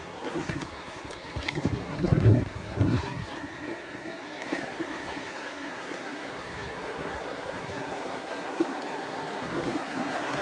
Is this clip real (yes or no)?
no